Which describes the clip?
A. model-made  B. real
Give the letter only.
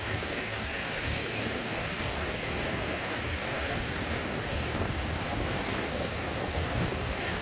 A